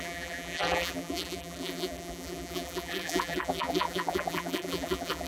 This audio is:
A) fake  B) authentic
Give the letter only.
A